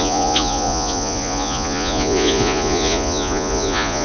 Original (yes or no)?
no